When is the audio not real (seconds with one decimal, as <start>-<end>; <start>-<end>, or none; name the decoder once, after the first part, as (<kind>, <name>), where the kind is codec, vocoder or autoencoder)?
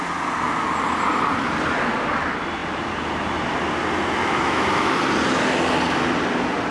4.2-5.0 (autoencoder, DAC-VAE)